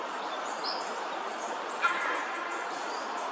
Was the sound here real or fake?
real